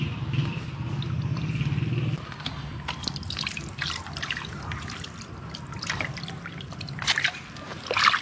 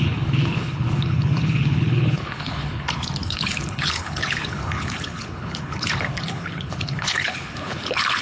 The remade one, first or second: second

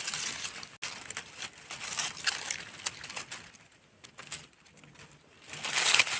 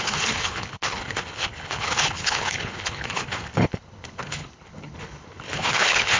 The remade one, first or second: second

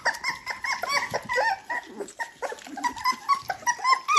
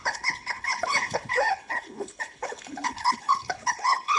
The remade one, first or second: second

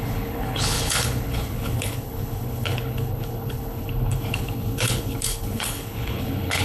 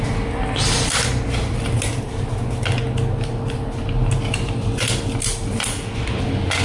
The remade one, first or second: first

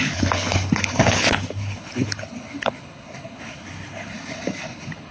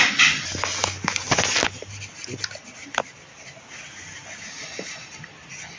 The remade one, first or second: first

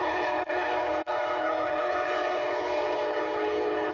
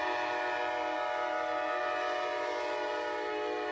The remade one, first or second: first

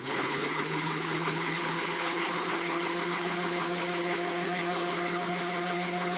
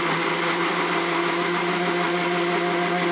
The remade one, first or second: first